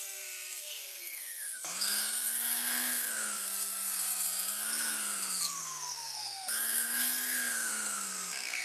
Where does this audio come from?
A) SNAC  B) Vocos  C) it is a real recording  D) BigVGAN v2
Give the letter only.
A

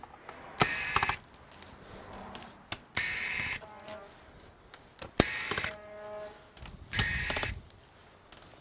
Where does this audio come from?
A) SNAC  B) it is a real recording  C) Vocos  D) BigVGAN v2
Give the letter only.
B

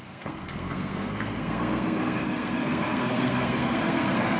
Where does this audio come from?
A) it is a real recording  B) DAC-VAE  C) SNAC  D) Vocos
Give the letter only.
C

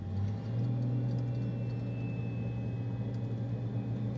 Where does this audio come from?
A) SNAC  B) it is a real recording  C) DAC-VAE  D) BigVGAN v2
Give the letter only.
B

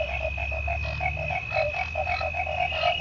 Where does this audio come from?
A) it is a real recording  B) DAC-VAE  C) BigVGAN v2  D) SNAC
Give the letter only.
A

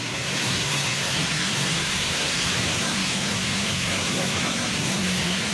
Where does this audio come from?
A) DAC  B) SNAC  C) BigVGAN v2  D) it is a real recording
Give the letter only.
B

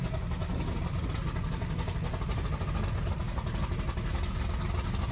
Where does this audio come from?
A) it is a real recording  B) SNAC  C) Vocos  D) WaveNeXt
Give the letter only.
A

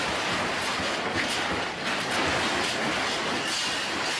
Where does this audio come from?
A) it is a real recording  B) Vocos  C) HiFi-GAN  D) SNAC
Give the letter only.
A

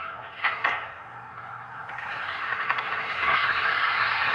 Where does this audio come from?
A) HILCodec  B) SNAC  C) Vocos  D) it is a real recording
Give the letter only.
B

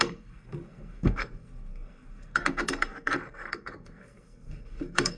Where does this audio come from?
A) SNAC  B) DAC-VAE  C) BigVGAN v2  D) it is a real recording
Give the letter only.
A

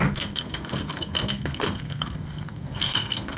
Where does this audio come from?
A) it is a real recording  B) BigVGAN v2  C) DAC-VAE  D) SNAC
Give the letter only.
D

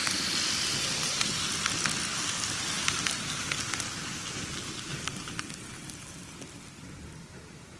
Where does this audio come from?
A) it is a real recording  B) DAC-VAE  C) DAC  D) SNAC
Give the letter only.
A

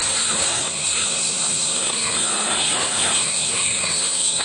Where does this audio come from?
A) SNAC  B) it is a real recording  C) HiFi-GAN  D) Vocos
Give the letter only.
A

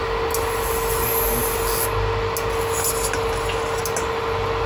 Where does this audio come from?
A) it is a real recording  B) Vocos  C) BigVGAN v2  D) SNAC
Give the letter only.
A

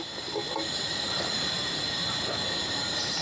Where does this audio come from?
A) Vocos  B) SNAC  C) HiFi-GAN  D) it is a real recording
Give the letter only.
D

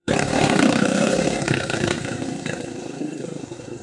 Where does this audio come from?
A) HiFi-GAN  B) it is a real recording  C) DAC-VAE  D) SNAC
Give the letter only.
D